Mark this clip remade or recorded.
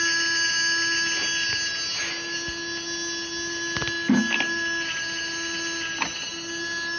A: recorded